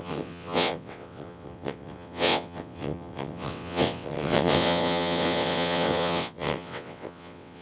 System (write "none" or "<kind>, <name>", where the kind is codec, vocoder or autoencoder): vocoder, WaveNeXt